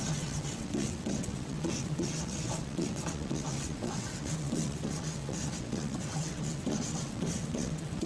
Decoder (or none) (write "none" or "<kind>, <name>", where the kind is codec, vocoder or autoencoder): vocoder, WaveNeXt